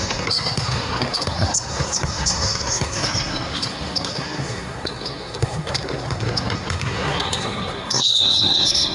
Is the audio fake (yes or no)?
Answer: yes